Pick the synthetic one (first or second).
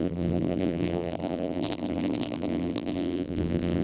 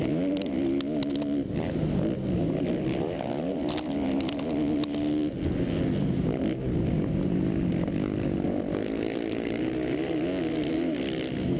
first